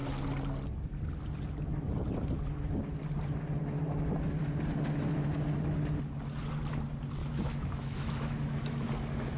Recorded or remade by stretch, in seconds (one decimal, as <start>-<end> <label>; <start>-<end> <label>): 0.0-7.2 recorded; 7.2-8.9 remade; 8.9-9.4 recorded

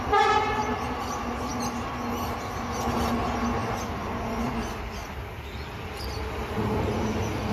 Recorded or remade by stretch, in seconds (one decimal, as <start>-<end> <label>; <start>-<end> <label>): 0.0-1.5 recorded; 1.5-2.4 remade; 2.4-3.6 recorded; 3.6-6.9 remade; 6.9-7.5 recorded

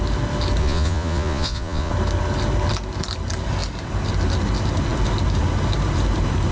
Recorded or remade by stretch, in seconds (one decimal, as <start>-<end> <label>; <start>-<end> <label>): 0.0-0.6 recorded; 0.6-1.9 remade; 1.9-6.5 recorded

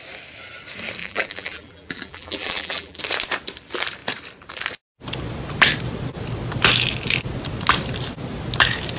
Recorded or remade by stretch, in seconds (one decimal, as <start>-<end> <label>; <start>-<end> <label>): 0.0-1.0 recorded; 1.0-3.0 remade; 3.0-9.0 recorded